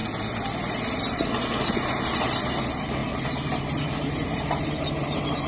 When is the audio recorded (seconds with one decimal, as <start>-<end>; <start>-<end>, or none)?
0.0-2.6; 3.0-3.6